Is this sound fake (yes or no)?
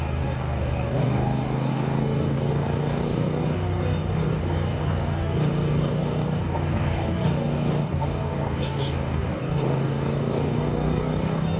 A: yes